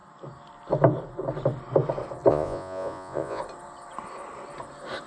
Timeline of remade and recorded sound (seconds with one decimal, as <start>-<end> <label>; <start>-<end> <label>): 0.0-2.3 recorded; 2.3-3.4 remade; 3.4-5.1 recorded